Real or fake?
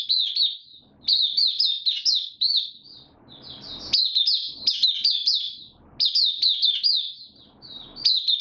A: real